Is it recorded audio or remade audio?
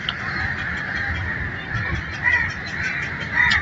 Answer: remade